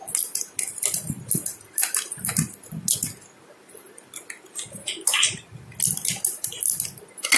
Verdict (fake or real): real